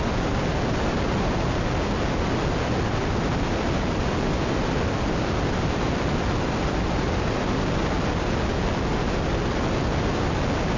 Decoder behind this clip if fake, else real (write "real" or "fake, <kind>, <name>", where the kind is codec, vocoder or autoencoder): real